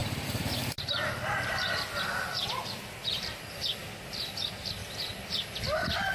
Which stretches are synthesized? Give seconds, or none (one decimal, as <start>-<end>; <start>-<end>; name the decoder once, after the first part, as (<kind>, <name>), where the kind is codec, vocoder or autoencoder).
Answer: 0.0-2.6 (vocoder, BigVGAN v2); 3.8-4.3; 4.8-6.1